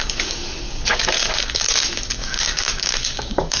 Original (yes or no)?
no